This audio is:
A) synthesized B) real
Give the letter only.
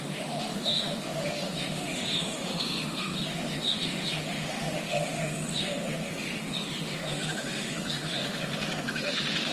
A